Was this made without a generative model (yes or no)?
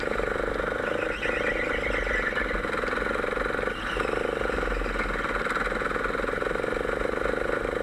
yes